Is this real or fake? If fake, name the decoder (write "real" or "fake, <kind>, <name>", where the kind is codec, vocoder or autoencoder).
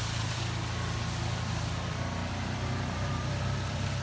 fake, vocoder, BigVGAN v2